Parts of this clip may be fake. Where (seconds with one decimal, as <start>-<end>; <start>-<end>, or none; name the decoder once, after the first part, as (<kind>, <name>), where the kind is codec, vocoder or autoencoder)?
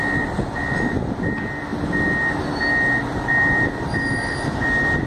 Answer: none